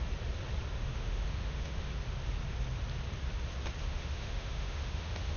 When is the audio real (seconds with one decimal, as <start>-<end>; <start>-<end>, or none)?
0.0-0.8; 2.0-3.8